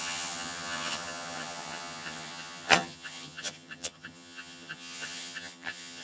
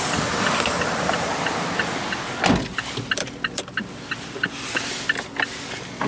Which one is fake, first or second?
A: first